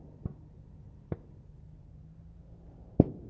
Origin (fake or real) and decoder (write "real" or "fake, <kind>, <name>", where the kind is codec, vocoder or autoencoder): real